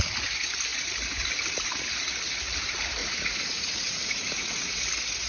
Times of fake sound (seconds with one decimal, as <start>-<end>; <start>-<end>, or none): 3.0-4.8